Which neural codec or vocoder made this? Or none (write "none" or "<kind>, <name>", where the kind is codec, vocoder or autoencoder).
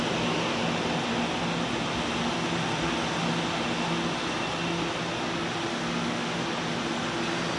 none